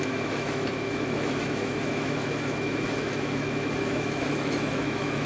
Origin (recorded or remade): remade